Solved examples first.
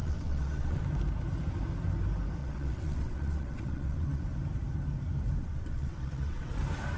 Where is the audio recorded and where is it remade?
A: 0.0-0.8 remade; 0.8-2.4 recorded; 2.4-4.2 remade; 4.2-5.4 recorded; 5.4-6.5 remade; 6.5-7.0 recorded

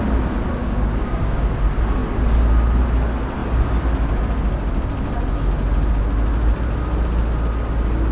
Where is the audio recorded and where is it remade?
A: 0.0-0.6 recorded; 0.6-1.5 remade; 1.5-8.1 recorded

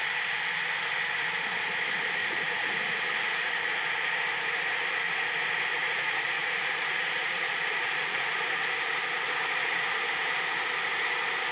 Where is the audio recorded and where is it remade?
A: 0.0-2.2 recorded; 2.2-2.7 remade; 2.7-5.8 recorded; 5.8-8.4 remade; 8.4-11.5 recorded

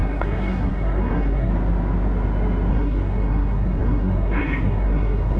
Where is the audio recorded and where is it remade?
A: 0.0-1.5 remade; 1.5-2.7 recorded; 2.7-5.4 remade